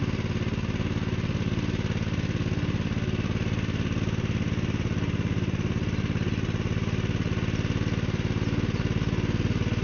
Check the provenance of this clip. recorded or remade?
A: recorded